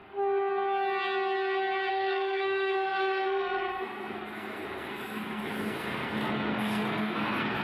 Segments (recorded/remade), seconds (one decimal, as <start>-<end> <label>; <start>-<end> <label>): 0.0-1.9 recorded; 1.9-7.6 remade